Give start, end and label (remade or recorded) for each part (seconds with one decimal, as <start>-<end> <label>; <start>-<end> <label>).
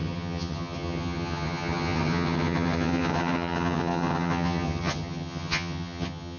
0.0-6.4 remade